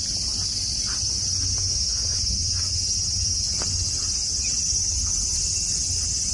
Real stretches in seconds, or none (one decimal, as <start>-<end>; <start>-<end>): 0.0-6.3

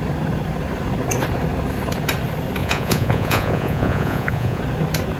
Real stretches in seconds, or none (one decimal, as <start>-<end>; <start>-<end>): 0.0-2.6; 4.6-5.2

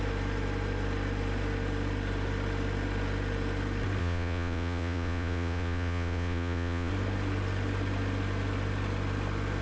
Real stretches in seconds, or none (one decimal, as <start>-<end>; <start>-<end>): 0.0-4.0; 6.9-9.6

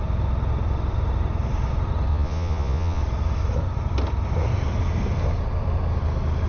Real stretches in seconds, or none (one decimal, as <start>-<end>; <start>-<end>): 0.0-2.1; 3.0-6.5

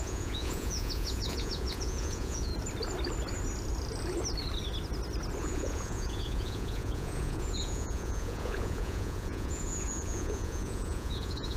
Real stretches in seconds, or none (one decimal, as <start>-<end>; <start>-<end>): 2.5-5.4

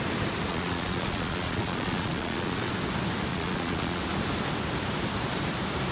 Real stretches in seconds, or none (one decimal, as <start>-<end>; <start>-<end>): 0.0-0.5; 2.7-3.3; 4.0-5.9

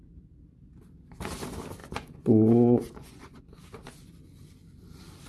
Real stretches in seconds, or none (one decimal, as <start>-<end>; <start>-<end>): 0.0-1.8; 3.4-5.3